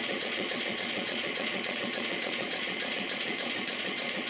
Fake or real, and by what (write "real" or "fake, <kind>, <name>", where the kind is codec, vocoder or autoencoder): fake, vocoder, Vocos